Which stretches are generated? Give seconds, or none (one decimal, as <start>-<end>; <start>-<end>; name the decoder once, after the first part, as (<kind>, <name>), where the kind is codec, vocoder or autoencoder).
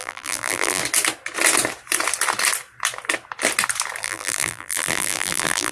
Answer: 0.0-0.8 (vocoder, BigVGAN v2); 4.0-5.7